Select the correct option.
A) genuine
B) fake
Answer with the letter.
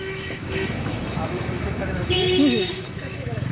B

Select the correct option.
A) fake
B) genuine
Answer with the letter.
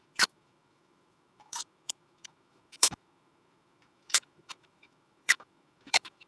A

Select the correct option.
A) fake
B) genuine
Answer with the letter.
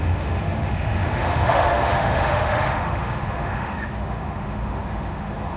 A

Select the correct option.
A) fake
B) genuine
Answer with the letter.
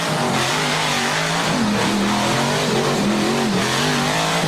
B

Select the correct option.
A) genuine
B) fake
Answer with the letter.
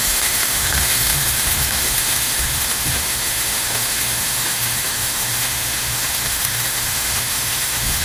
B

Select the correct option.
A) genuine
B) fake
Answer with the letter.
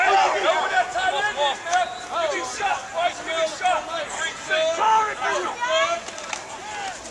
A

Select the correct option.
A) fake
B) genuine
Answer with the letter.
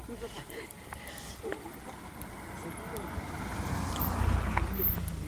B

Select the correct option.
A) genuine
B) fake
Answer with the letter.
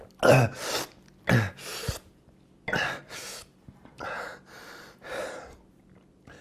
A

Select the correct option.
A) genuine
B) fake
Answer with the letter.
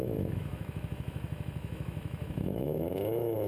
B